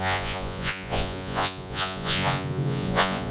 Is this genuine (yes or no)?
no